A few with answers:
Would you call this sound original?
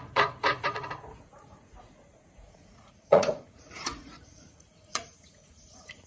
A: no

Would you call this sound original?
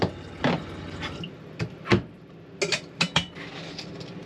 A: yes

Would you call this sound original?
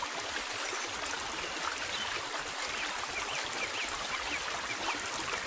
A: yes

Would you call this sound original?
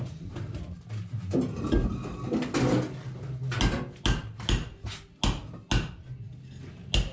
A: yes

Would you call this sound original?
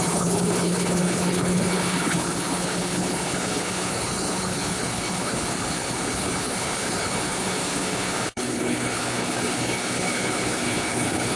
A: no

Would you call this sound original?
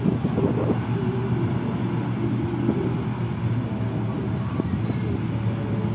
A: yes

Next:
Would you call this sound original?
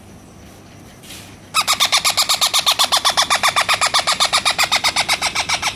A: yes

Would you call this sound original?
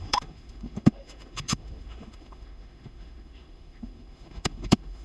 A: no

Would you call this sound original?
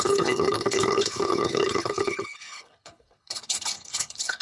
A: no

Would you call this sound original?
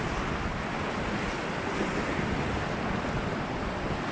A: yes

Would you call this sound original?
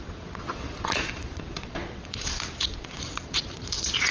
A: no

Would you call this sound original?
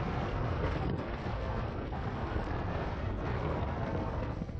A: no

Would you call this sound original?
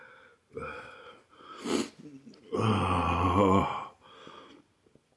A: yes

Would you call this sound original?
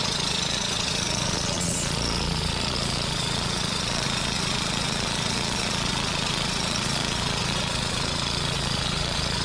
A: no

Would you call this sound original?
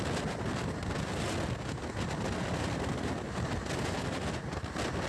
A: yes